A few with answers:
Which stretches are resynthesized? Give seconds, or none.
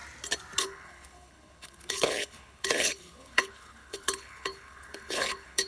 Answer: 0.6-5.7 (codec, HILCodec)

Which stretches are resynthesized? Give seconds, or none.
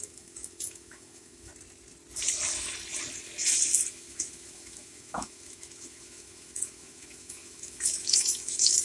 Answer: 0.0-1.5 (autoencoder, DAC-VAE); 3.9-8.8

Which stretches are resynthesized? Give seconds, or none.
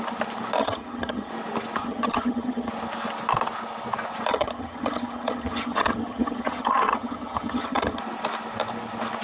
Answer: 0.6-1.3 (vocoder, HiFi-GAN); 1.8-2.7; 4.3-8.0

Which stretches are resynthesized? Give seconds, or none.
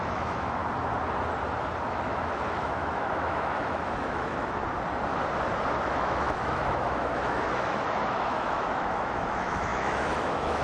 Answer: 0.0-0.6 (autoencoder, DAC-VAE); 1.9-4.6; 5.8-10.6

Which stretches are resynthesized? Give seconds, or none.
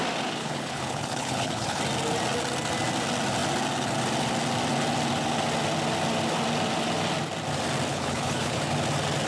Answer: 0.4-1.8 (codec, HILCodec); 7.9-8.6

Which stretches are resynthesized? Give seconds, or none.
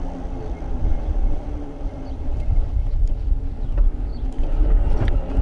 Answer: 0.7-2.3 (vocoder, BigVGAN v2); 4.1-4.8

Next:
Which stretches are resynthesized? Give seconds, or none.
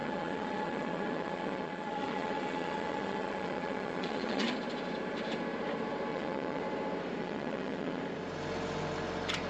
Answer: 0.0-4.5 (vocoder, WaveNeXt); 6.1-6.6; 7.2-8.0